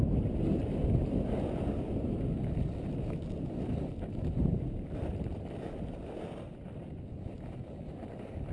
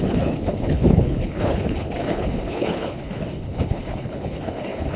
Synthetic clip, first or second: second